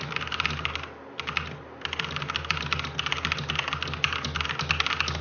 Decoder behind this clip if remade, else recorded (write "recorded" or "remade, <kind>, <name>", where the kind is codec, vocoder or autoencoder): recorded